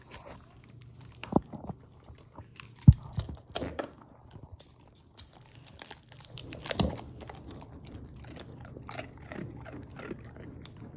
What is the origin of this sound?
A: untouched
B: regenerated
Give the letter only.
B